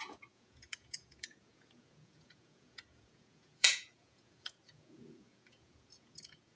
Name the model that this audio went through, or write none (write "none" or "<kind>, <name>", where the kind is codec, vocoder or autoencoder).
vocoder, Vocos